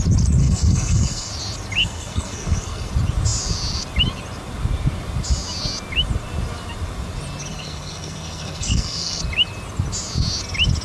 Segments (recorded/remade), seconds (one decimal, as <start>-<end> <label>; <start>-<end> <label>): 0.0-0.4 recorded; 0.4-1.3 remade; 1.3-1.8 recorded; 1.8-2.9 remade; 2.9-7.5 recorded; 7.5-9.2 remade; 9.2-10.8 recorded